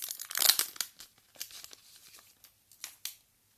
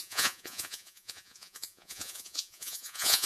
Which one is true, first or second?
first